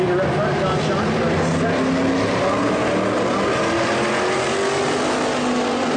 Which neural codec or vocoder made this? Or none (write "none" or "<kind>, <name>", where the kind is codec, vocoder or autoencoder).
none